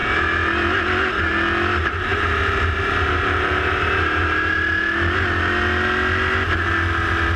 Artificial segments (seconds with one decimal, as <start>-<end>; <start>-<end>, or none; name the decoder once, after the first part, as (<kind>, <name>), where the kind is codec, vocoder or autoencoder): none